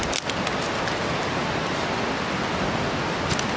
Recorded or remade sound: recorded